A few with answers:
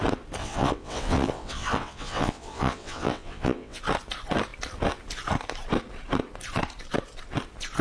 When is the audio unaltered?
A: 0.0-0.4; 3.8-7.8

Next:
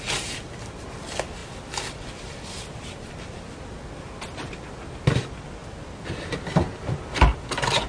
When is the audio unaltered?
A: 0.0-7.9

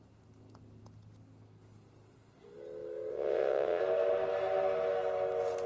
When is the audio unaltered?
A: 0.0-3.1; 3.8-5.7

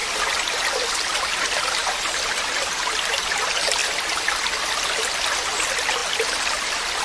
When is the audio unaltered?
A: 0.0-7.0